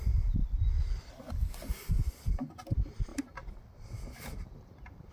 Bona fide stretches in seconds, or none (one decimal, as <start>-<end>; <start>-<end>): 0.0-0.4; 1.3-3.1